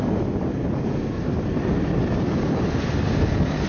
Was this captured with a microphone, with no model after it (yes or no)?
yes